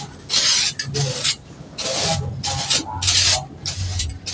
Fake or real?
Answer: real